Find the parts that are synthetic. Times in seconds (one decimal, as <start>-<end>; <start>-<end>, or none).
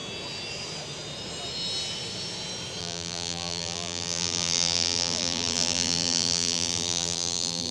2.8-7.7